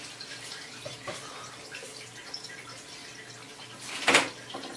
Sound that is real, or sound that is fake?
real